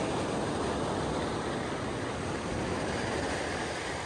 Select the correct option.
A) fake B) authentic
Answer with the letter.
B